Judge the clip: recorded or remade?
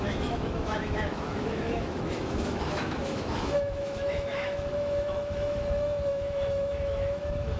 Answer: remade